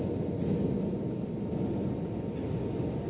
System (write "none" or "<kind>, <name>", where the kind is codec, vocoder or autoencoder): none